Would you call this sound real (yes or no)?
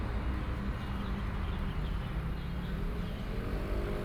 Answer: yes